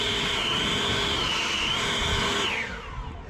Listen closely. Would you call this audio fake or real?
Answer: real